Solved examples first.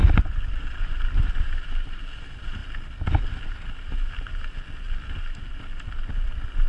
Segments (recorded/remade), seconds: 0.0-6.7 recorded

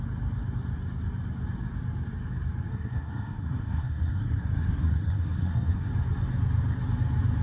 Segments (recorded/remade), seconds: 0.0-2.7 recorded; 2.7-5.9 remade; 5.9-7.4 recorded

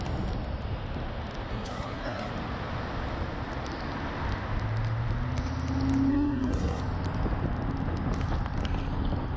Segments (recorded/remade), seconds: 0.0-1.5 recorded; 1.5-2.3 remade; 2.3-6.1 recorded; 6.1-6.8 remade; 6.8-9.4 recorded

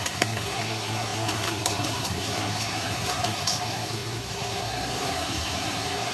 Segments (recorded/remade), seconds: 0.0-6.1 remade

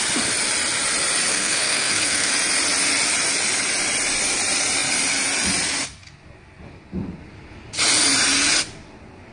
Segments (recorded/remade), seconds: 0.0-1.3 recorded; 1.3-2.3 remade; 2.3-9.3 recorded

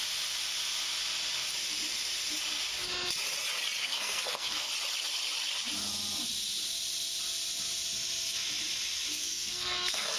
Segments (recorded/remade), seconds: 0.0-3.8 recorded; 3.8-4.7 remade; 4.7-9.1 recorded; 9.1-10.2 remade